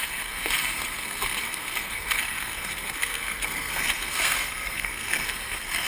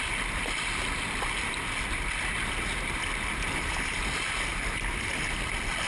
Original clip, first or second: second